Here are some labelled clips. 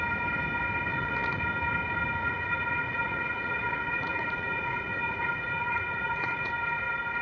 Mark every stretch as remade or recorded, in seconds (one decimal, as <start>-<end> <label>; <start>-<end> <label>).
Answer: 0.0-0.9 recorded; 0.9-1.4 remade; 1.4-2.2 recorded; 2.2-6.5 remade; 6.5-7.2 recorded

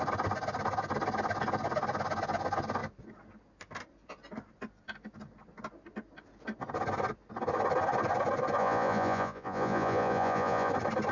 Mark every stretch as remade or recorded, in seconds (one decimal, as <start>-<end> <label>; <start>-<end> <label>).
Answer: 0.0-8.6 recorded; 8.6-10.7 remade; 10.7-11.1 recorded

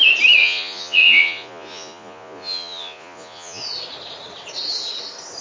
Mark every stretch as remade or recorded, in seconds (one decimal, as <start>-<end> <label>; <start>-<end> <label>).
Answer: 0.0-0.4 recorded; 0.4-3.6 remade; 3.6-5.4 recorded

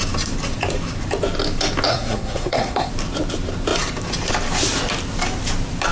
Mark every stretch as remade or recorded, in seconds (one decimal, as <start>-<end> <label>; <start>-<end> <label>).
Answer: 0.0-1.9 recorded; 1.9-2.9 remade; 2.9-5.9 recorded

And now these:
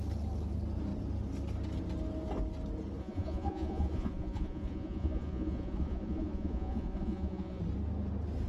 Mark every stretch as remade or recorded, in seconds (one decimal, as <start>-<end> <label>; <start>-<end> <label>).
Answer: 0.0-3.0 recorded; 3.0-7.6 remade; 7.6-8.5 recorded

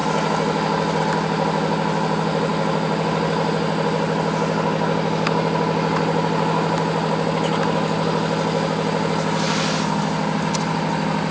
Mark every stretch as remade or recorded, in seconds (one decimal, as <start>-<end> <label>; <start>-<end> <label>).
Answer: 0.0-11.3 recorded

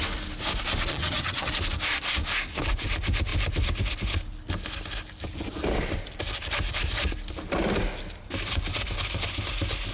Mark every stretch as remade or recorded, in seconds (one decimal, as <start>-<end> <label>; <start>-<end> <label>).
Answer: 0.0-0.9 recorded; 0.9-1.5 remade; 1.5-9.9 recorded